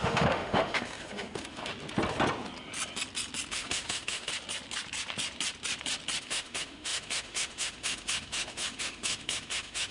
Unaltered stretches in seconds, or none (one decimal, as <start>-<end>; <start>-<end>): 1.7-3.5; 4.3-6.2